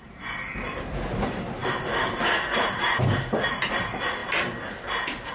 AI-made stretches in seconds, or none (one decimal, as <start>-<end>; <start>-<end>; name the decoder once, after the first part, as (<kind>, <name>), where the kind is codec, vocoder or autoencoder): none

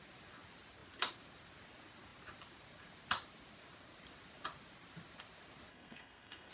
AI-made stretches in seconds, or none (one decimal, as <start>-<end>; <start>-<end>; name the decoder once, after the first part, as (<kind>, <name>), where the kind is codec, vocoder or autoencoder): 5.7-6.5 (codec, SNAC)

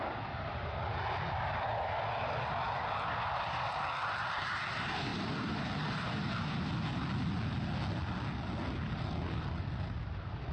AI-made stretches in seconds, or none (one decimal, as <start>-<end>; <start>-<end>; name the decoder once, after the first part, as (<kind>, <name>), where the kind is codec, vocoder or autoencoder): none

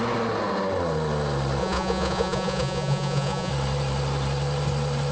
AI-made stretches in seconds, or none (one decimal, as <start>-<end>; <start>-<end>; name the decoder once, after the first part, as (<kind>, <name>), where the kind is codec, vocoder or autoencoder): 1.6-3.5 (vocoder, Vocos)

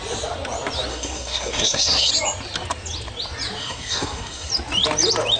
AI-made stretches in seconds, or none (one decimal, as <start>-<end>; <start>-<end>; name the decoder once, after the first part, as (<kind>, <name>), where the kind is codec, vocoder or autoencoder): 0.9-2.1 (codec, SNAC); 3.6-4.5